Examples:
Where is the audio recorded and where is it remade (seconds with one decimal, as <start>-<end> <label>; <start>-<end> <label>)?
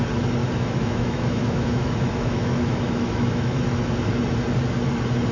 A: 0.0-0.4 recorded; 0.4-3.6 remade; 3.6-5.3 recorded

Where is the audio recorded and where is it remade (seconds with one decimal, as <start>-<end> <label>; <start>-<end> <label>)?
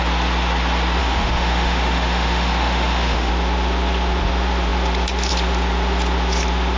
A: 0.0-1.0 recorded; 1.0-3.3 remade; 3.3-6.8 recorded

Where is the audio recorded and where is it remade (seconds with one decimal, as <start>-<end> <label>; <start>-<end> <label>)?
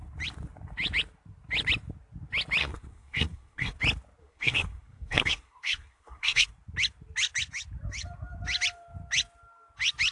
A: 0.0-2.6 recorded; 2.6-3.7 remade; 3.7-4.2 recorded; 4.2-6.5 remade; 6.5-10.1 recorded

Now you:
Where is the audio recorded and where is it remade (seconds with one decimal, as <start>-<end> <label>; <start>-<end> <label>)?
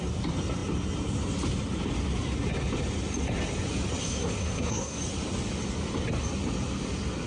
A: 0.0-4.0 recorded; 4.0-5.0 remade; 5.0-7.3 recorded